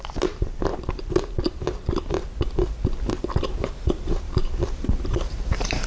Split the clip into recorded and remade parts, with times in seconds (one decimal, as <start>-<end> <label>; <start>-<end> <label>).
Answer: 0.0-0.7 remade; 0.7-4.0 recorded; 4.0-5.9 remade